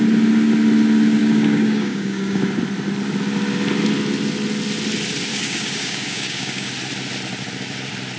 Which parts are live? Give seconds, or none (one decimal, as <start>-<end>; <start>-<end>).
0.0-1.2; 2.4-5.3; 6.7-8.2